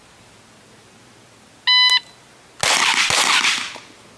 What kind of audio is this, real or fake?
real